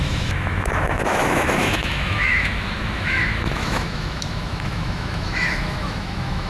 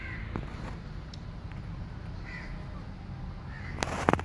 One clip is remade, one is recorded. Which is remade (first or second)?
first